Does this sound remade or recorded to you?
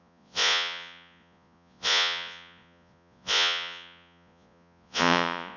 remade